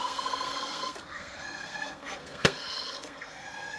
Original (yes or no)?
no